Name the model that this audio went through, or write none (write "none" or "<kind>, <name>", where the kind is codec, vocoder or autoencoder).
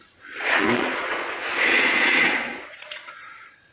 vocoder, Vocos